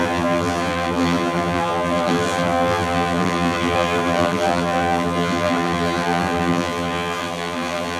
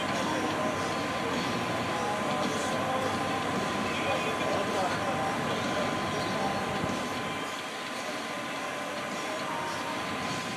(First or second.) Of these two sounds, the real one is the second